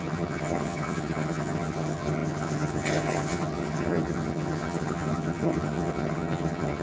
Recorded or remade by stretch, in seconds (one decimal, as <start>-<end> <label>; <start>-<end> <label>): 0.0-6.8 remade